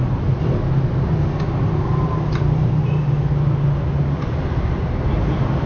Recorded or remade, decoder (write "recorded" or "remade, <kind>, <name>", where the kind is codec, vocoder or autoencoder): recorded